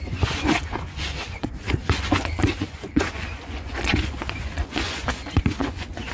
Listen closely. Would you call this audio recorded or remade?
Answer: remade